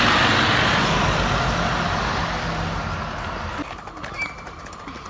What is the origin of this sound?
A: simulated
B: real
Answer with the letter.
B